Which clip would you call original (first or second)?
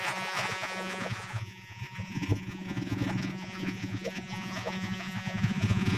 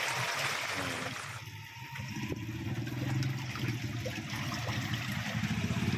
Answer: second